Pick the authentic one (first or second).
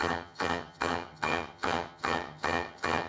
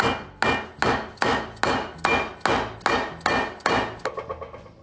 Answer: second